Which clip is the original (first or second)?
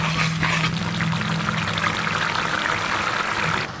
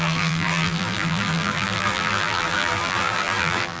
first